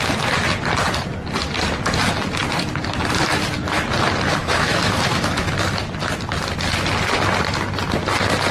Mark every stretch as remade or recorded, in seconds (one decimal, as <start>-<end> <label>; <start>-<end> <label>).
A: 0.0-4.4 recorded; 4.4-5.5 remade; 5.5-8.5 recorded